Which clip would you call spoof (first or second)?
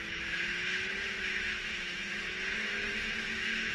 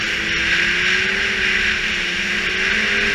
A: first